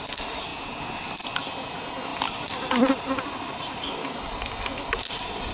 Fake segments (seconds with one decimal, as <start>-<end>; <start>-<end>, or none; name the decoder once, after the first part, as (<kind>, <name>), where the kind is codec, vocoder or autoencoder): none

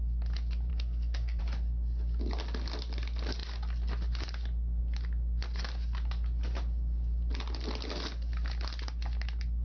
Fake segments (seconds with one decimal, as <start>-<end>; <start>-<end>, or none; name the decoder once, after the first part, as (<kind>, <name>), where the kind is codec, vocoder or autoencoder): 0.7-1.4 (codec, SNAC)

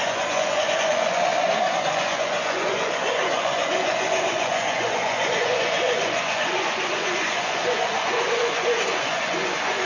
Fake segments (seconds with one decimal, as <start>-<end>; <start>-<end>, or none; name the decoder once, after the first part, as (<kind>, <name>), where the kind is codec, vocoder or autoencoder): 0.0-9.9 (vocoder, Vocos)